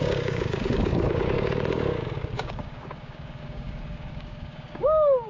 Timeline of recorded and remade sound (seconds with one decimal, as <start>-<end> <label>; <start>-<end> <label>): 0.0-5.3 remade

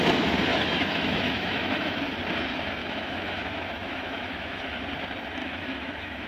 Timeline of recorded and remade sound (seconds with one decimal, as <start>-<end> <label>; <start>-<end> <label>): 0.0-0.5 recorded; 0.5-2.0 remade; 2.0-2.8 recorded; 2.8-4.8 remade; 4.8-5.4 recorded; 5.4-6.3 remade

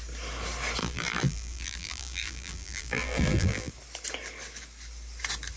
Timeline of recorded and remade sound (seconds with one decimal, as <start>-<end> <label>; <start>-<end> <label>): 0.0-0.8 recorded; 0.8-3.7 remade; 3.7-5.6 recorded

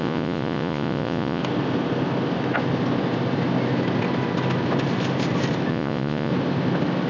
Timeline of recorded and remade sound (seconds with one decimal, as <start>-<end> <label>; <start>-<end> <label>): 0.0-1.4 remade; 1.4-5.7 recorded; 5.7-6.3 remade; 6.3-7.1 recorded